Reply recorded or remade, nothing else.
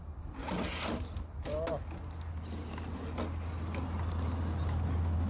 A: recorded